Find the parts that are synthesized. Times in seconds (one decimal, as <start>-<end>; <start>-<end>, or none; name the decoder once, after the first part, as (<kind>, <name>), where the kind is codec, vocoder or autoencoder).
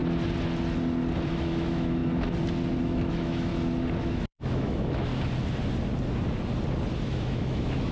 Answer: 1.3-2.0 (autoencoder, DAC-VAE); 2.8-3.5; 4.0-5.1; 7.0-7.9